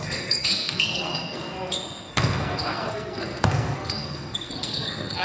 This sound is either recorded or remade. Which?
remade